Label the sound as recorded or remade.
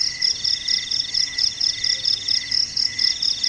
recorded